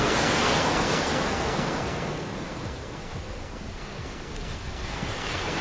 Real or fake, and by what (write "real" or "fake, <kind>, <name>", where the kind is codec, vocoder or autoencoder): fake, codec, SNAC